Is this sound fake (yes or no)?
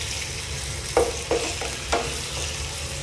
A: no